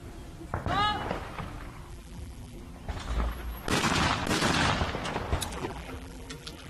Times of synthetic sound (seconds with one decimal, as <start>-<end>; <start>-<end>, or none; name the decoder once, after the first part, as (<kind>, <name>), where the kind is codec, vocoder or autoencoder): 1.9-2.6 (vocoder, BigVGAN v2); 5.5-6.7